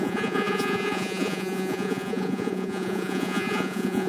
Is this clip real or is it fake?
fake